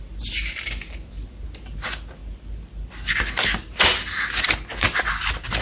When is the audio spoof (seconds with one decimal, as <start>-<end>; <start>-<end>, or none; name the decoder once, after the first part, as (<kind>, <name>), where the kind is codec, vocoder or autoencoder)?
none